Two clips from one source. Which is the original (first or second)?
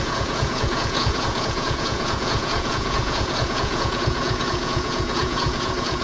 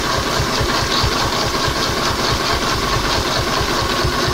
second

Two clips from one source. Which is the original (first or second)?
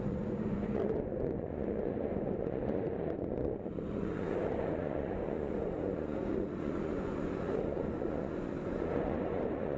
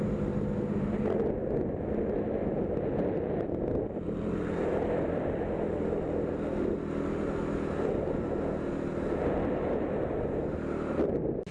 second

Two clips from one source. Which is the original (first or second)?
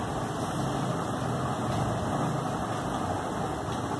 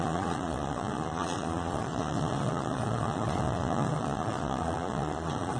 first